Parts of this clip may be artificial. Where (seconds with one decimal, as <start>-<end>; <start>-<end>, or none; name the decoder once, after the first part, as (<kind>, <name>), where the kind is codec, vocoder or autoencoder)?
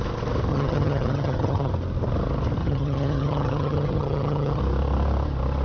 0.5-1.7 (vocoder, HiFi-GAN); 2.6-4.6